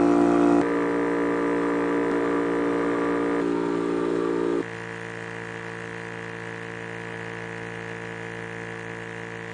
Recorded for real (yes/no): yes